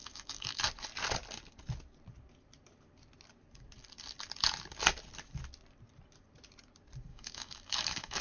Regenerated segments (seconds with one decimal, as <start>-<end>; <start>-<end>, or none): 0.0-0.6; 7.1-8.2